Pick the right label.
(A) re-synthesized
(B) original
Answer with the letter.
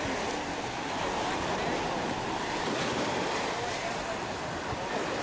B